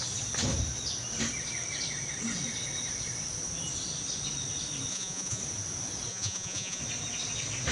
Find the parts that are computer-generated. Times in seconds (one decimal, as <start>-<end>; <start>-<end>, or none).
4.9-5.4; 6.1-6.8